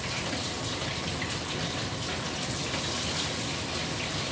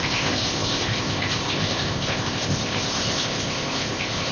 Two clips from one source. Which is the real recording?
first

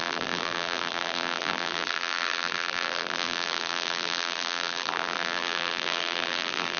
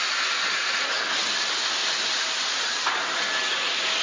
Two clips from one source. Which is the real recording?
second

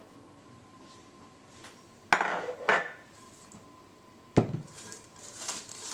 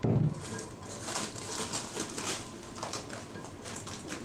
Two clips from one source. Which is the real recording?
second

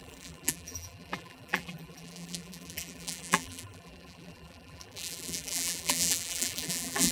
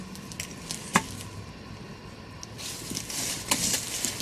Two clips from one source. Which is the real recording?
second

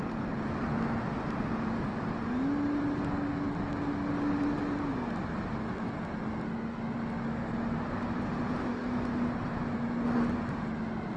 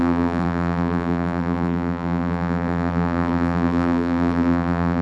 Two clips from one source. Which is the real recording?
first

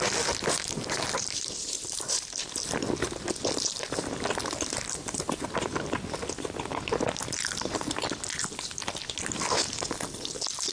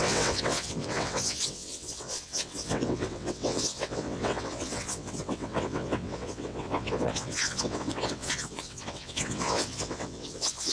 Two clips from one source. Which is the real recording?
first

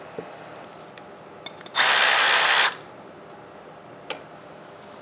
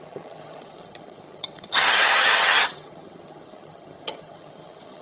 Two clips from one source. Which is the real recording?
first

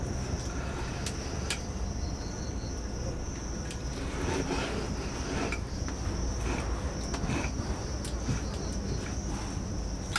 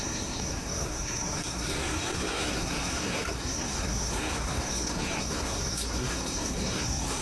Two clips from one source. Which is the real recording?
first